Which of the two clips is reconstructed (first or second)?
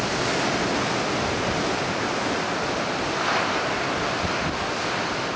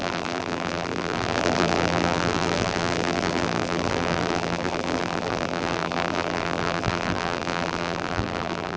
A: second